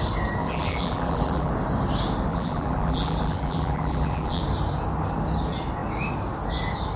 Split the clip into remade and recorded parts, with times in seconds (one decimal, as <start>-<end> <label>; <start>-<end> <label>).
0.0-0.4 recorded; 0.4-1.5 remade; 1.5-2.3 recorded; 2.3-4.4 remade; 4.4-7.0 recorded